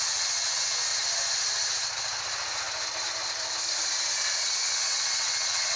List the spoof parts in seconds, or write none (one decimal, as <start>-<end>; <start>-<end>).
0.0-0.9; 4.4-5.8